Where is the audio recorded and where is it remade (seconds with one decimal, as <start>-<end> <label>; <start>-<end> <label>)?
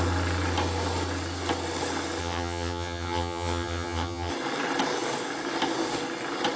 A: 0.0-2.2 recorded; 2.2-4.3 remade; 4.3-6.6 recorded